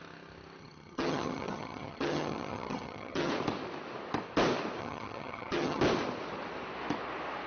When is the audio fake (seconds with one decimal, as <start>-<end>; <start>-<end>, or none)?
0.6-3.3; 4.8-5.8